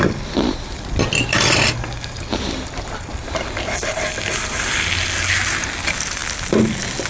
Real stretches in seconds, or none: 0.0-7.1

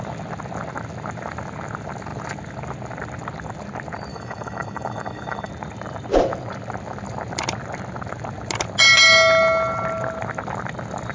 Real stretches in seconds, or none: 0.0-4.1; 5.5-11.1

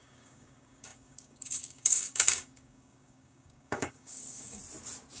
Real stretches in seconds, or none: 4.6-5.2

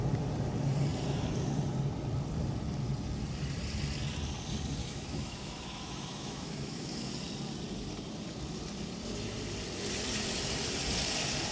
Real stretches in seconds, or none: 0.0-4.8; 7.1-11.5

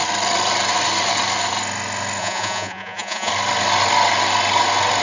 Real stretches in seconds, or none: 0.0-2.2; 3.3-5.0